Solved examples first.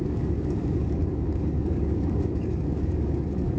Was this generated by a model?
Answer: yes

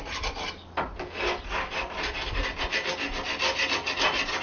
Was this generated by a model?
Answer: no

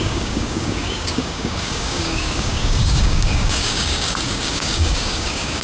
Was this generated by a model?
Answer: yes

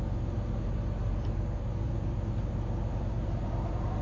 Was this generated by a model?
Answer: no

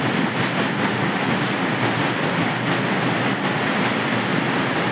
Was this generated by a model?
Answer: no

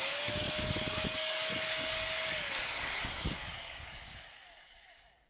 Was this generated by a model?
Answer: yes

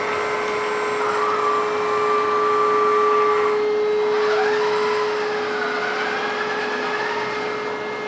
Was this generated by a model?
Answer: no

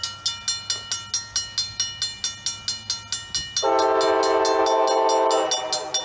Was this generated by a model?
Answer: no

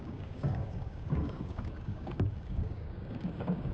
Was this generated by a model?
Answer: yes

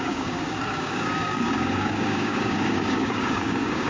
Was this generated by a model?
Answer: yes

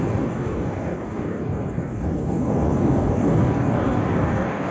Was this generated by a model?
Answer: yes